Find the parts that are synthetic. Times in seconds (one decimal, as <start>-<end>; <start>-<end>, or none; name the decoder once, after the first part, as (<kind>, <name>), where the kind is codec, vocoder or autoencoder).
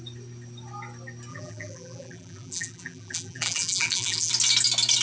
1.3-4.3 (vocoder, BigVGAN v2)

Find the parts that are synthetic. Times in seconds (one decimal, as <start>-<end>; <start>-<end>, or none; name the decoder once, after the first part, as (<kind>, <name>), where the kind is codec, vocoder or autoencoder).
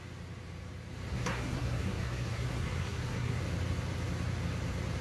1.1-3.4 (codec, SNAC)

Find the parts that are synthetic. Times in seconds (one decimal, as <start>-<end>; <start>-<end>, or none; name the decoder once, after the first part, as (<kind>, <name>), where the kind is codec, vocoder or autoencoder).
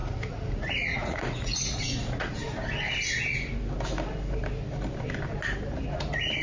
0.0-2.5 (vocoder, Vocos)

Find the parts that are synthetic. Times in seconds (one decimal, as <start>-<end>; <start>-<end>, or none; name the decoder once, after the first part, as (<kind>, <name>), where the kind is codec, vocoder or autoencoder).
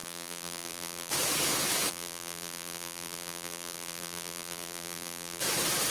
0.0-1.1 (vocoder, BigVGAN v2); 1.9-5.4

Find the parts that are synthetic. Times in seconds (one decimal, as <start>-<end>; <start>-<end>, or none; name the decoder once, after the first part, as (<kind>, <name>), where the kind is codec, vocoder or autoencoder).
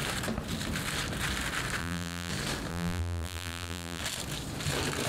1.8-2.3 (vocoder, BigVGAN v2); 2.7-4.0